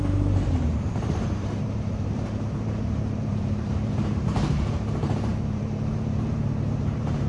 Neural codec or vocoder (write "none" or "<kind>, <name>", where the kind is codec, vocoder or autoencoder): vocoder, BigVGAN v2